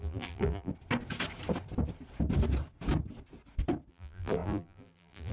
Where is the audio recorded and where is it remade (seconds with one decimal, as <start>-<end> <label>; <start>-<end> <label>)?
0.0-0.7 remade; 0.7-3.9 recorded; 3.9-5.3 remade